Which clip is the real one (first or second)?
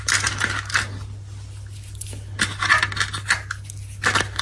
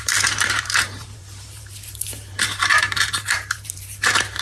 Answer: first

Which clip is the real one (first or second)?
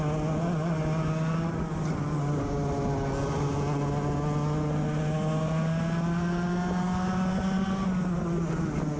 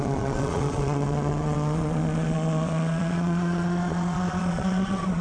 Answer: first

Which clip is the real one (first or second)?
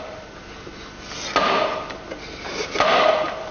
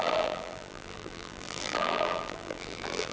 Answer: first